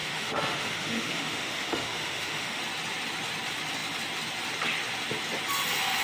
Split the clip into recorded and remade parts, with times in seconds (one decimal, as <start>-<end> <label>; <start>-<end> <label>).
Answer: 0.0-2.6 remade; 2.6-6.0 recorded